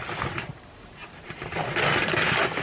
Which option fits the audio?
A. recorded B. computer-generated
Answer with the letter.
A